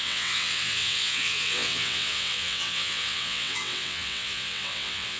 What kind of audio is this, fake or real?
fake